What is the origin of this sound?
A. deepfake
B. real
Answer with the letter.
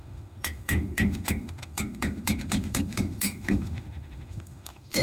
A